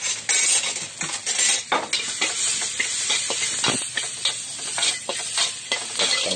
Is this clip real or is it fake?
real